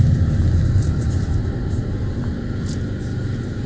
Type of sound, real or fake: real